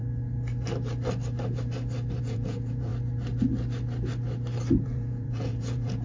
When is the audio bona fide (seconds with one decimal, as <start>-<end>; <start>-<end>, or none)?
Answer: 0.0-2.2; 2.9-4.7